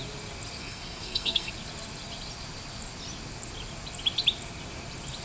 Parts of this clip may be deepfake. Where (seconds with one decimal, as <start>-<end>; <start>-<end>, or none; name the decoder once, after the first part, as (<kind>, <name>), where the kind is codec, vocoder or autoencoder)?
0.6-1.5 (codec, SNAC)